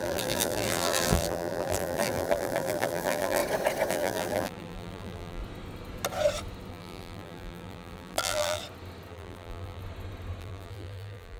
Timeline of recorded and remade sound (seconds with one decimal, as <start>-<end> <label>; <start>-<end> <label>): 0.0-3.4 remade; 3.4-3.9 recorded; 3.9-5.4 remade; 5.4-6.7 recorded; 6.7-8.6 remade; 8.6-9.1 recorded; 9.1-9.8 remade; 9.8-10.4 recorded; 10.4-11.4 remade